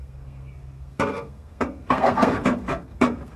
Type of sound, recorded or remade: remade